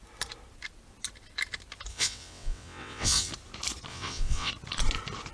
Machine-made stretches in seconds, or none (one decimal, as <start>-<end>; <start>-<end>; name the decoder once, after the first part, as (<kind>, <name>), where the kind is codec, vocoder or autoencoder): 1.9-3.3 (vocoder, WaveNeXt); 3.9-4.5